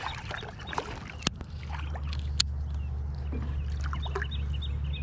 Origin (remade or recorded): recorded